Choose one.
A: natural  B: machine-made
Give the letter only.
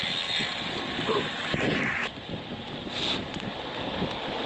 A